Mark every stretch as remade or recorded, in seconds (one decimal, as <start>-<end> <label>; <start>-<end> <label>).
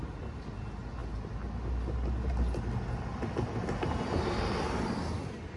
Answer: 0.0-5.6 recorded